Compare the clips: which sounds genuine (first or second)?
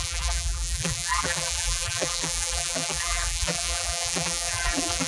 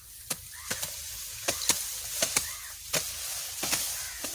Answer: second